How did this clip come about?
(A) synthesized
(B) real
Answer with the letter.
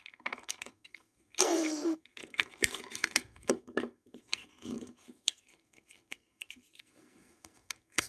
A